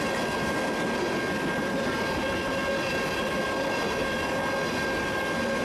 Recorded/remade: recorded